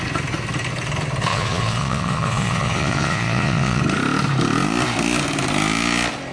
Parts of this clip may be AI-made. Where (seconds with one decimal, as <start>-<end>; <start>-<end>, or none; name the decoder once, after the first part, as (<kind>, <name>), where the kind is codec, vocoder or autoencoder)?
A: 1.3-3.8 (vocoder, Vocos)